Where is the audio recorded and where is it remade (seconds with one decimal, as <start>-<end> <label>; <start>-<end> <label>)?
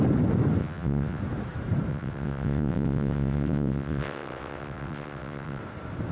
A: 0.0-0.6 recorded; 0.6-1.2 remade; 1.2-1.9 recorded; 1.9-5.6 remade; 5.6-6.1 recorded